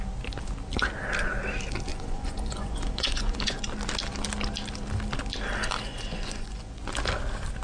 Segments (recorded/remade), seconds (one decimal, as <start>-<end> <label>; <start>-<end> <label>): 0.0-1.9 recorded; 1.9-3.6 remade; 3.6-5.9 recorded; 5.9-6.8 remade; 6.8-7.6 recorded